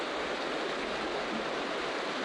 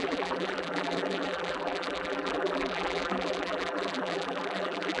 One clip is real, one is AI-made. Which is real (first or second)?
first